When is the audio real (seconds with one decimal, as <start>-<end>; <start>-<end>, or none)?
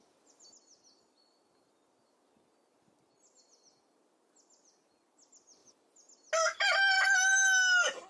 0.0-8.1